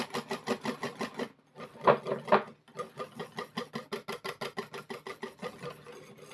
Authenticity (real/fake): real